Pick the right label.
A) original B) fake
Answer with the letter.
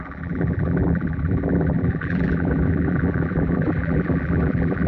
B